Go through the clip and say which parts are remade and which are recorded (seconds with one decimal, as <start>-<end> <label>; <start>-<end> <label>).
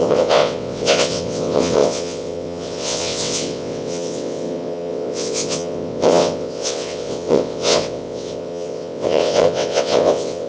0.0-10.5 remade